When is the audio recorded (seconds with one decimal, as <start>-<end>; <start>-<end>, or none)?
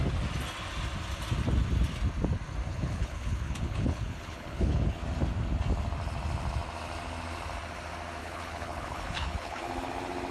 0.0-2.7; 5.0-8.2; 9.6-10.3